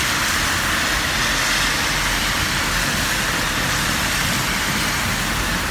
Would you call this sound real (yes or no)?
yes